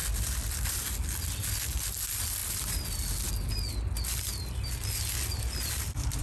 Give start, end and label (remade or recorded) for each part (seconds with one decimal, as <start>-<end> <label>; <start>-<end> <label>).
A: 0.0-6.2 recorded